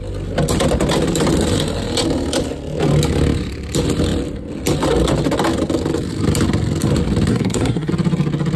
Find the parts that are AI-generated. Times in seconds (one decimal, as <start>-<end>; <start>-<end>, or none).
7.3-7.9